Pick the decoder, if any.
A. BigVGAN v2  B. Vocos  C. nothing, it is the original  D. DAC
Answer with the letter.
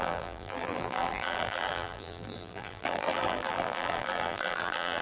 A